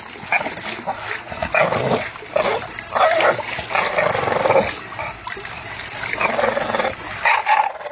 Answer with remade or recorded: recorded